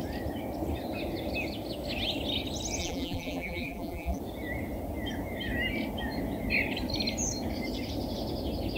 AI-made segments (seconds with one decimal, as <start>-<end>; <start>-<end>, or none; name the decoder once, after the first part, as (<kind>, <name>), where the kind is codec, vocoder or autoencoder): 2.8-4.2 (vocoder, BigVGAN v2)